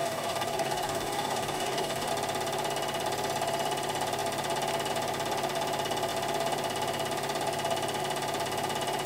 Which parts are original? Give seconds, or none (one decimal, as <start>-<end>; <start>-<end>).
2.1-9.1